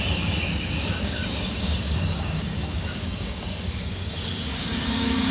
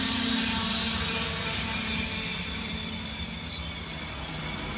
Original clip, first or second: second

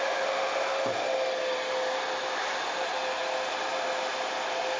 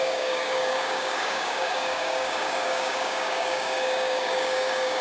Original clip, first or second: first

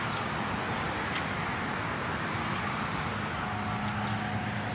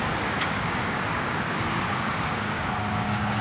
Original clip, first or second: first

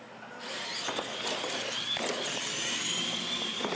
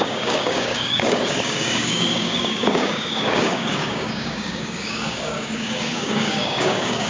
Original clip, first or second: first